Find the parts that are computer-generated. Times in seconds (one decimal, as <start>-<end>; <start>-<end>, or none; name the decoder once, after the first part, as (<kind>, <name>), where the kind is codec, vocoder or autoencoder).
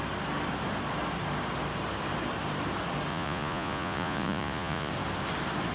3.1-4.9 (vocoder, Vocos)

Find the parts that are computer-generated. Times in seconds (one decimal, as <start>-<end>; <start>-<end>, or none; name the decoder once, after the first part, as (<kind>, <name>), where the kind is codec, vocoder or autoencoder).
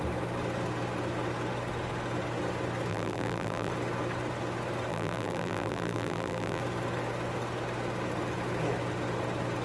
2.9-3.7 (vocoder, BigVGAN v2); 4.9-6.6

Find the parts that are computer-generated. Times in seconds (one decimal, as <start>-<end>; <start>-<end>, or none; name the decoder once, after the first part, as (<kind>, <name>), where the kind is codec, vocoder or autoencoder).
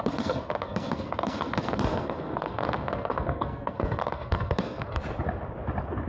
0.0-5.0 (codec, SNAC)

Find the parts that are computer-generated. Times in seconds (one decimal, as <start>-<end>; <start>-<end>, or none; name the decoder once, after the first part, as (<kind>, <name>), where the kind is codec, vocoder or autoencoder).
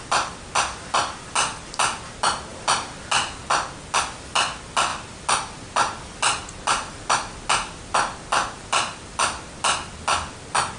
none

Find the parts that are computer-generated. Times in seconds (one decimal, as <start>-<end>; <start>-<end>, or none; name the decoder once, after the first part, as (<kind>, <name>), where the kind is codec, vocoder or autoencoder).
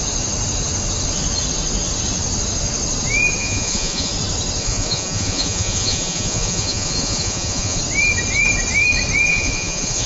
3.4-4.1 (vocoder, Vocos); 4.6-7.8; 9.3-10.1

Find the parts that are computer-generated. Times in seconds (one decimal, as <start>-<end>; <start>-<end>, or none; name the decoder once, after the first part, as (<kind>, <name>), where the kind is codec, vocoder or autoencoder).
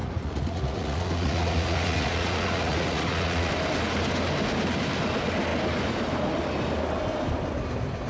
0.0-3.5 (vocoder, Vocos)